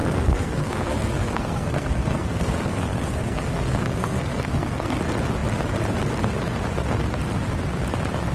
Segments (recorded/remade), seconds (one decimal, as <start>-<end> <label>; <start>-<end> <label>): 0.0-5.0 remade; 5.0-8.3 recorded